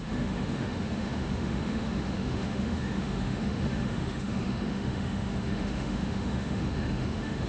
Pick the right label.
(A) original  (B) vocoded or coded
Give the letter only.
B